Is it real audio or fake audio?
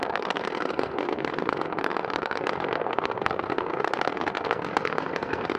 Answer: fake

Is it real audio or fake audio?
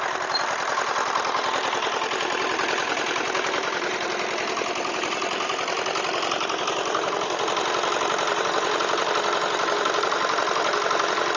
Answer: real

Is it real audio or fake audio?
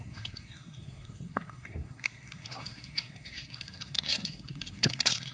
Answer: fake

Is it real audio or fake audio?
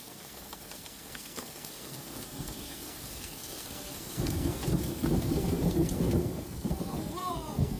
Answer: fake